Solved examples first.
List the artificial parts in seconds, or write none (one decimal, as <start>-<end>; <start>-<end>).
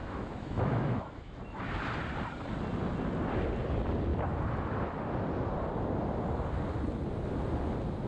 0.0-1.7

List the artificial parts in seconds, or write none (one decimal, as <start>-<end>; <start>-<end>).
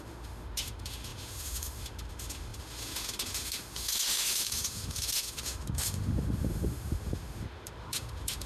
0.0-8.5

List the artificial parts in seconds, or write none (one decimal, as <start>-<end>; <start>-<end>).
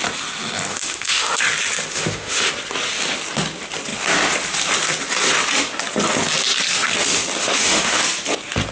0.7-1.4; 1.9-2.5; 7.4-8.0